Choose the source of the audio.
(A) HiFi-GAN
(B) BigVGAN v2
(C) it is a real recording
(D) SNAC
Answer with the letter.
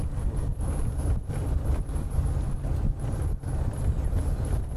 C